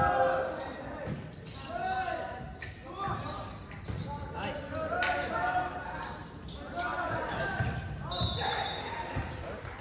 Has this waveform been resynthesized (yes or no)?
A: no